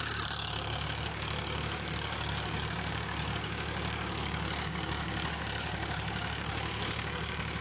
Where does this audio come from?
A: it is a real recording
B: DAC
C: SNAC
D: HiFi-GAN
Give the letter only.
B